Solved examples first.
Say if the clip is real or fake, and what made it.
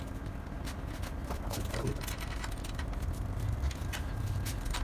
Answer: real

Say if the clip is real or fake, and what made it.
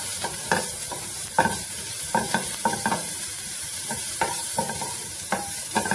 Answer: fake, vocoder, BigVGAN v2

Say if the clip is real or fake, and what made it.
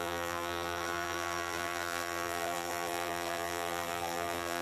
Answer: fake, vocoder, BigVGAN v2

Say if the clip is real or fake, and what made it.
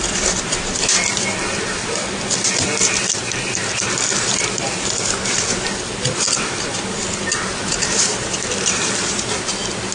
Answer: fake, vocoder, BigVGAN v2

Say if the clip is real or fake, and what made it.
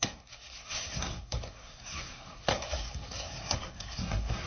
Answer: fake, codec, SNAC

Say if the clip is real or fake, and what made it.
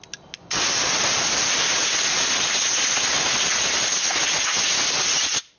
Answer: real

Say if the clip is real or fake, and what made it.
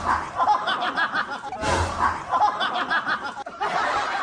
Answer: fake, vocoder, BigVGAN v2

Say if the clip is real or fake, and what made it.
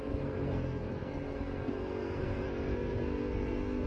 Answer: fake, codec, SNAC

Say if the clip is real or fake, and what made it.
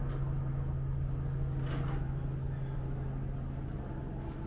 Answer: real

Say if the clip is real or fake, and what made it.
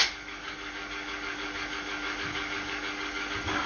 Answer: fake, codec, DAC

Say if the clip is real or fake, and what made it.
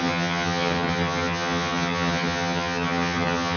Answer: fake, vocoder, HiFi-GAN